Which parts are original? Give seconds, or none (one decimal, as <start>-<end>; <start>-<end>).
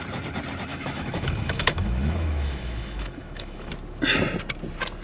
0.0-0.7; 3.7-5.0